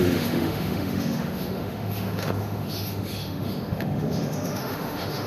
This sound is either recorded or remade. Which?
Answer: remade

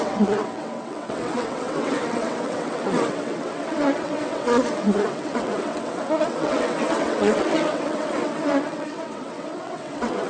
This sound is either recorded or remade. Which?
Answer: remade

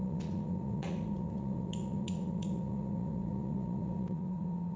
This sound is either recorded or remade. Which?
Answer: remade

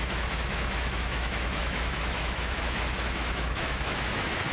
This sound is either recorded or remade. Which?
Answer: remade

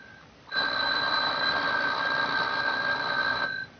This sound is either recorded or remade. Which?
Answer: recorded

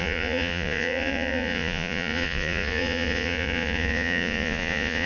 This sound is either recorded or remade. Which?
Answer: remade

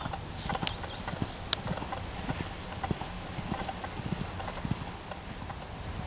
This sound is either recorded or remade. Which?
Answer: recorded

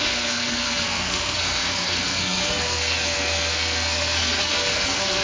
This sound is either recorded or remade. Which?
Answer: remade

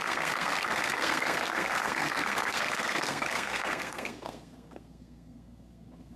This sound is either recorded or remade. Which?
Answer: remade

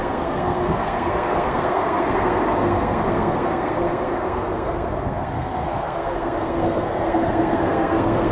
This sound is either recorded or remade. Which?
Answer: remade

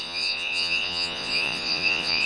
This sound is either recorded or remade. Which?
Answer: remade